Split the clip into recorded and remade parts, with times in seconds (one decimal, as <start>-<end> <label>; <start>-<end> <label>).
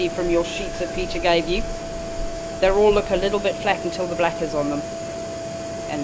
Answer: 0.0-0.5 recorded; 0.5-1.8 remade; 1.8-2.3 recorded; 2.3-2.9 remade; 2.9-6.0 recorded